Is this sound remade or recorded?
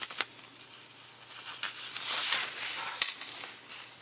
recorded